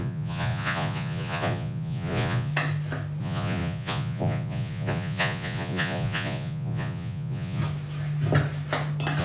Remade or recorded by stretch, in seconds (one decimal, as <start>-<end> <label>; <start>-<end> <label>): 0.0-2.5 remade; 2.5-3.2 recorded; 3.2-7.6 remade; 7.6-9.2 recorded